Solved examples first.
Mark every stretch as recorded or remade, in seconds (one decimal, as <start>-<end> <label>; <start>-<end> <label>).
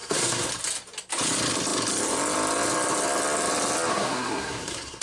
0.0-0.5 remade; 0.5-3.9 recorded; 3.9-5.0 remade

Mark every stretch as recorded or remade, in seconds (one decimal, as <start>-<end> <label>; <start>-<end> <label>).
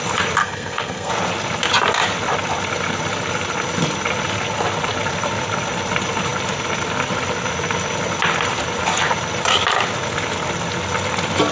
0.0-0.4 recorded; 0.4-1.1 remade; 1.1-11.5 recorded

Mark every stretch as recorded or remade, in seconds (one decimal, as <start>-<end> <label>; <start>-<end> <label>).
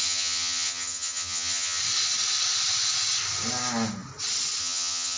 0.0-1.8 remade; 1.8-4.6 recorded; 4.6-5.2 remade